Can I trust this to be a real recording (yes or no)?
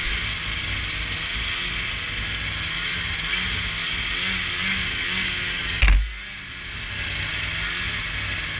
yes